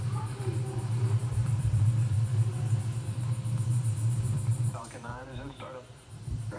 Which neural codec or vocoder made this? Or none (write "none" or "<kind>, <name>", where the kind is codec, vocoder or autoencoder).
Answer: vocoder, BigVGAN v2